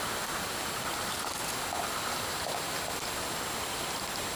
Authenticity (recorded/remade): recorded